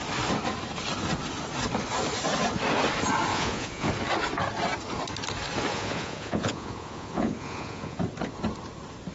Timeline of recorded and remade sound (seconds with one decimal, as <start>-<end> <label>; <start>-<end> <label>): 0.0-3.3 recorded; 3.3-3.9 remade; 3.9-5.7 recorded; 5.7-8.0 remade; 8.0-9.1 recorded

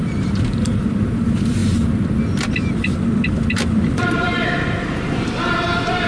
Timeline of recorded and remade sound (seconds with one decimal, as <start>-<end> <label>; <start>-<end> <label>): 0.0-0.6 recorded; 0.6-1.6 remade; 1.6-3.9 recorded; 3.9-6.1 remade

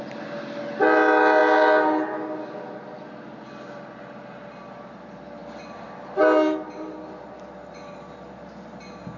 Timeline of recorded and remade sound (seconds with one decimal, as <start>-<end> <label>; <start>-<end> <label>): 0.0-9.2 recorded

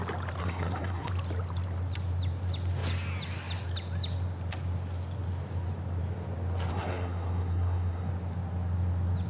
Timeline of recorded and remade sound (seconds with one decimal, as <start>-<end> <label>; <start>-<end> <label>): 0.0-0.4 recorded; 0.4-1.1 remade; 1.1-6.7 recorded; 6.7-8.1 remade; 8.1-9.3 recorded

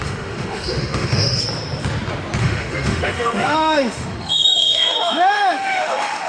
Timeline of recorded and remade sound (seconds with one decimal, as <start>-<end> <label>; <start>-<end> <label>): 0.0-1.4 remade; 1.4-2.4 recorded; 2.4-6.3 remade